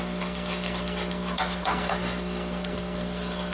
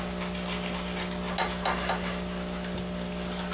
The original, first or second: second